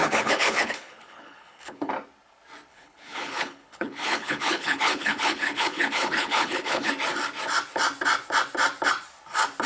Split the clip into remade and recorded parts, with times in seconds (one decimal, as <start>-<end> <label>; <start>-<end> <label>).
0.0-1.9 remade; 1.9-2.7 recorded; 2.7-6.9 remade; 6.9-9.7 recorded